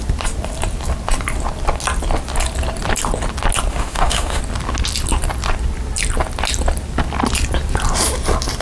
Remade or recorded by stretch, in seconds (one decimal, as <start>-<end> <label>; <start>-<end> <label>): 0.0-3.7 recorded; 3.7-4.4 remade; 4.4-8.6 recorded